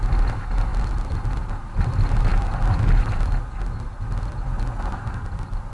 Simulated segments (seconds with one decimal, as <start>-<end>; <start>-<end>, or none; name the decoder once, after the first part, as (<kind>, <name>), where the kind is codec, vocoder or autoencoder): none